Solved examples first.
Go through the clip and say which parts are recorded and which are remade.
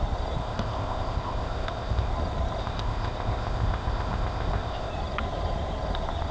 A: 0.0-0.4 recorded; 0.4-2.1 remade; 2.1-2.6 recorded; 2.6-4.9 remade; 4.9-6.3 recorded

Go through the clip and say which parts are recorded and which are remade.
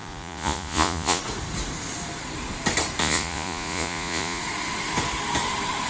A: 0.0-1.2 remade; 1.2-3.0 recorded; 3.0-4.4 remade; 4.4-5.9 recorded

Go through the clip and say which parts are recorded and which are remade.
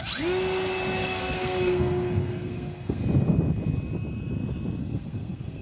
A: 0.0-1.0 recorded; 1.0-3.0 remade; 3.0-4.8 recorded; 4.8-5.6 remade